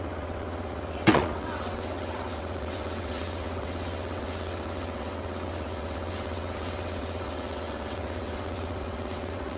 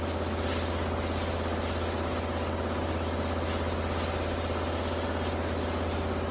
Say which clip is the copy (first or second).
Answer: first